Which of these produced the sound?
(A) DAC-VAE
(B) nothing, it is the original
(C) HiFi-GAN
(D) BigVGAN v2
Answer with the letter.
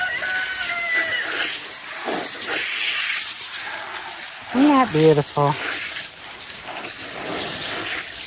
B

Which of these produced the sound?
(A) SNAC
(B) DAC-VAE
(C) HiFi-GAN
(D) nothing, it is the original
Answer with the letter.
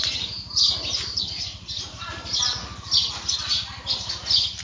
D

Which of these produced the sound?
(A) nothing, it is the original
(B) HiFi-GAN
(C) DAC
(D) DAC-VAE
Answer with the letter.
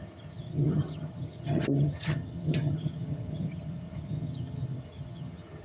B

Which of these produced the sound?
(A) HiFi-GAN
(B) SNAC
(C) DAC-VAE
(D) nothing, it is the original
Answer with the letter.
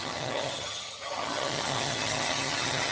A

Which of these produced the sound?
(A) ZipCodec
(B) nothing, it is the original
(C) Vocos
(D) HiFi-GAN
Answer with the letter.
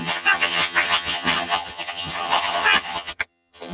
D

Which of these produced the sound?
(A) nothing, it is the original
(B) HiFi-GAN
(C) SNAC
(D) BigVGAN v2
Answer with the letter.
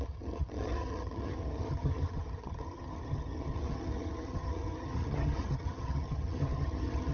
B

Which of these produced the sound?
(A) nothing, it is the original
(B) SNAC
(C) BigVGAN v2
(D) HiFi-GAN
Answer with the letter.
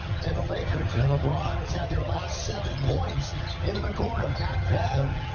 D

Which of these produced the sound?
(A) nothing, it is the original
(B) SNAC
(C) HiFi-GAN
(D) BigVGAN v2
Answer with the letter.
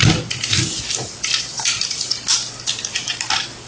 A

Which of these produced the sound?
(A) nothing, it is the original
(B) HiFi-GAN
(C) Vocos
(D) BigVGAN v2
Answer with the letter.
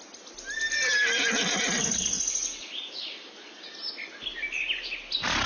A